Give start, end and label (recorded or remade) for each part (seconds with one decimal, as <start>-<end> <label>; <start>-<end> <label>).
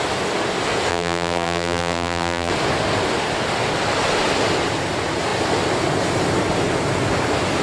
0.0-0.9 recorded; 0.9-2.5 remade; 2.5-7.6 recorded